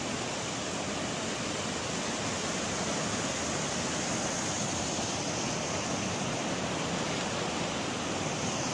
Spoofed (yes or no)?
no